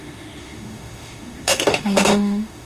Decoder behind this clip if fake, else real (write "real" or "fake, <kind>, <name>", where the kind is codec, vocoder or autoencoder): fake, autoencoder, DAC-VAE